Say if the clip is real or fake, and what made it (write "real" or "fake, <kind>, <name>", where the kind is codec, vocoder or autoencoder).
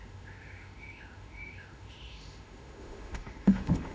fake, autoencoder, DAC-VAE